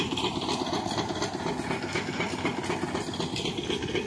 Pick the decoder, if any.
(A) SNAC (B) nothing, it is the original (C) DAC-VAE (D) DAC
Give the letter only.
B